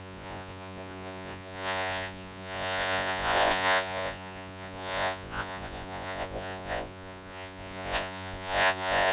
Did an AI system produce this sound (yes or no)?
yes